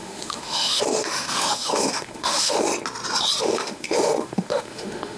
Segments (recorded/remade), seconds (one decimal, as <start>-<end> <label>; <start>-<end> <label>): 0.0-2.7 remade; 2.7-3.4 recorded; 3.4-5.2 remade